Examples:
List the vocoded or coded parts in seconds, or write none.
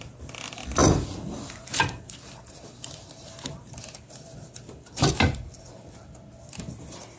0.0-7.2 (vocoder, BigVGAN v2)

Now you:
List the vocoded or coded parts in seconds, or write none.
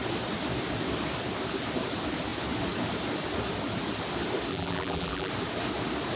4.5-5.3 (vocoder, BigVGAN v2)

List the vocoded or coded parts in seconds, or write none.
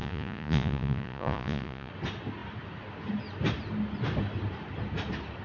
0.0-1.9 (vocoder, Vocos)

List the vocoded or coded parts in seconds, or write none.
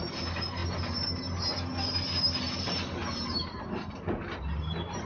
none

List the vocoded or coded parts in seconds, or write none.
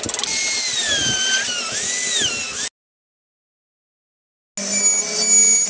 none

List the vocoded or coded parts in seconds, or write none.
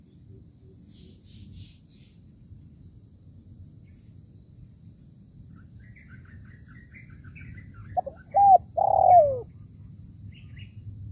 none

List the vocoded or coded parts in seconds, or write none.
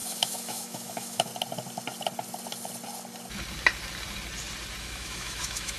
0.0-1.3 (autoencoder, DAC-VAE); 4.8-5.8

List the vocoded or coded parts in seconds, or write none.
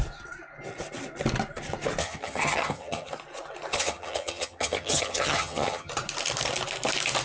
2.0-3.1 (vocoder, HiFi-GAN); 3.7-5.9